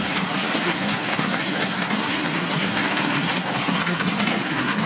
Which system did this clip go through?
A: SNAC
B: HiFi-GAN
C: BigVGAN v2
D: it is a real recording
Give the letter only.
A